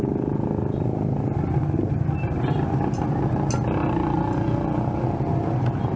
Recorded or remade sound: recorded